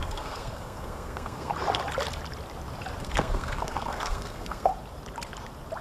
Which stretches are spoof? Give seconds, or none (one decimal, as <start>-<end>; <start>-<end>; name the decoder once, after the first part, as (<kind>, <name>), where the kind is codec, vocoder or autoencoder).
0.0-1.5 (codec, SNAC); 3.0-4.7